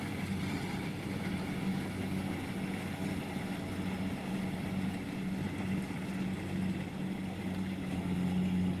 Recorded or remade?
recorded